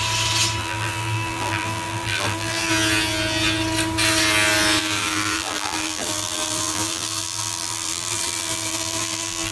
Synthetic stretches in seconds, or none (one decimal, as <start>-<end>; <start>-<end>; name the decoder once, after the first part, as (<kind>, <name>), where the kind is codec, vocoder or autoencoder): 0.6-2.7 (vocoder, BigVGAN v2); 4.8-9.5